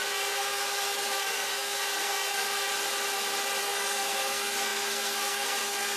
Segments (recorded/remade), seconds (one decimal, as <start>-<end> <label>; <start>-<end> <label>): 0.0-2.7 remade; 2.7-3.6 recorded; 3.6-6.0 remade